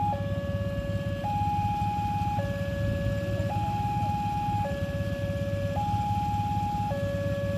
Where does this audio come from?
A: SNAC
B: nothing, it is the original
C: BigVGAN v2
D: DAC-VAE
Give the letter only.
B